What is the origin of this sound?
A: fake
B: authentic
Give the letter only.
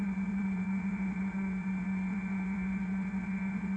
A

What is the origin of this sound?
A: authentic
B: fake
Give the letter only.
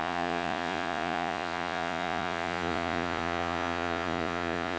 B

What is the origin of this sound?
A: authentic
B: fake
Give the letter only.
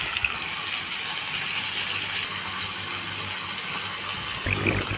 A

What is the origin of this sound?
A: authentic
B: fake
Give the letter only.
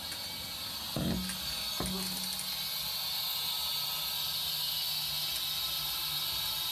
A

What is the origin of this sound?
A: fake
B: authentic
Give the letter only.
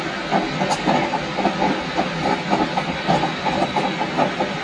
B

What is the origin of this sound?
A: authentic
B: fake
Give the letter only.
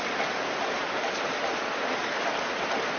A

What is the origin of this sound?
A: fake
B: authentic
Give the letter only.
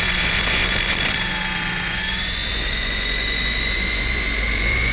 A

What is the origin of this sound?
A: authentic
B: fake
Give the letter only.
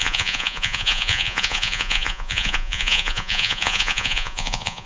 B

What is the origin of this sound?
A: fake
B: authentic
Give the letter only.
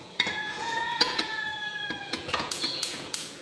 A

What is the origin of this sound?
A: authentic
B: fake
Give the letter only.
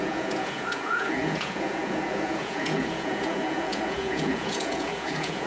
B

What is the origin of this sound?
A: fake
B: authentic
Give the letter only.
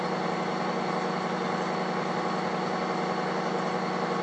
B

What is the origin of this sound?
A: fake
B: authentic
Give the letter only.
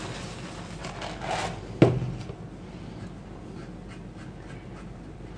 B